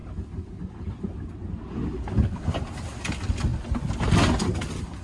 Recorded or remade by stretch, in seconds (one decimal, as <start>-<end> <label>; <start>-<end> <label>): 0.0-5.0 recorded